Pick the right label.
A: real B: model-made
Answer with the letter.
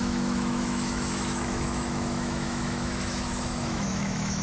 B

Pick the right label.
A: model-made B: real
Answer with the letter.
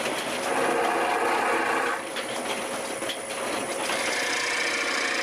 B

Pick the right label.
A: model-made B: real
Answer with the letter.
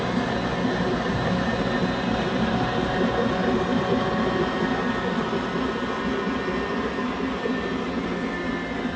B